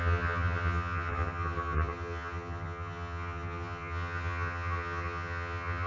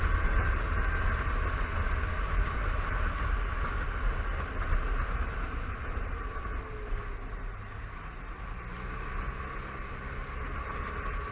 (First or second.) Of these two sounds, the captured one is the second